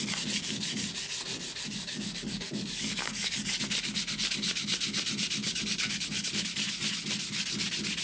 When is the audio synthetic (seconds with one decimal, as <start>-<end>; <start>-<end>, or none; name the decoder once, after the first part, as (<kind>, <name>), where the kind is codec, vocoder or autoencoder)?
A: 1.6-3.6 (codec, DAC); 5.4-6.3